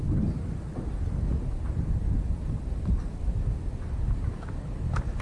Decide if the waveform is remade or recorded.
recorded